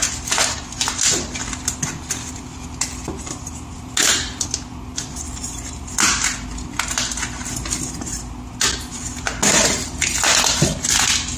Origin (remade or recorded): recorded